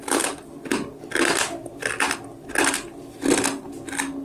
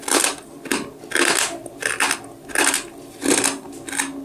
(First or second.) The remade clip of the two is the first